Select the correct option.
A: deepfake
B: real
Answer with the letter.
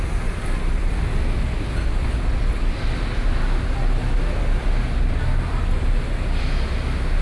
B